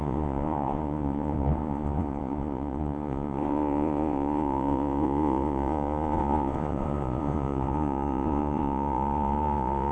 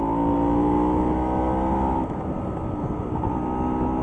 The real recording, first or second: second